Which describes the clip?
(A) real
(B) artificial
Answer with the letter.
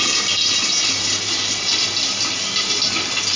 A